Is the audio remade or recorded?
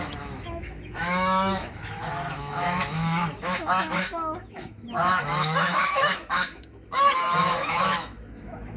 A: remade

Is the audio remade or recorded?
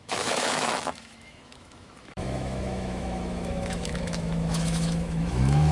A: remade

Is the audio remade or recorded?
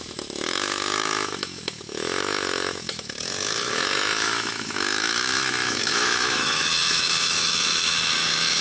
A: remade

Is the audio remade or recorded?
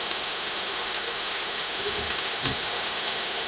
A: remade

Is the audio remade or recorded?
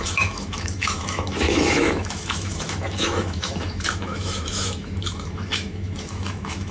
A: remade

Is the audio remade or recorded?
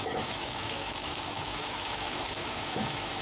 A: remade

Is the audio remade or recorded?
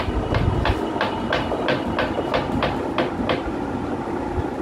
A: recorded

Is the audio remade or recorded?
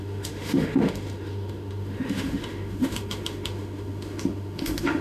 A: remade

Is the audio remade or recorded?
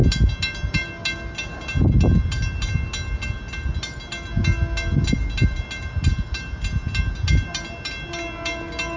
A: recorded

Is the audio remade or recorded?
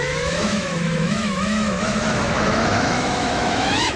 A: remade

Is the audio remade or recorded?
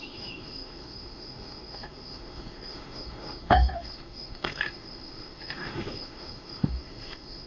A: remade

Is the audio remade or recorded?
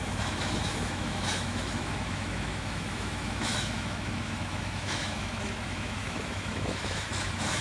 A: remade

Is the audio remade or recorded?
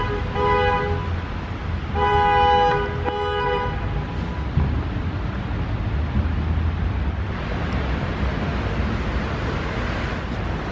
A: recorded